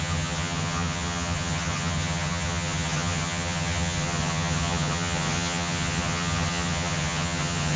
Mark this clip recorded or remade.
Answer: remade